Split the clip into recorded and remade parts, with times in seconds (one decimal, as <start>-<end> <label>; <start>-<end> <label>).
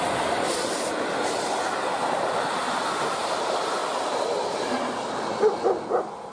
0.0-6.3 recorded